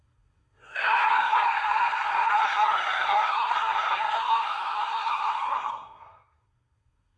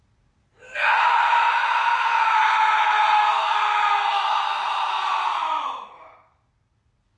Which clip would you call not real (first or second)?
first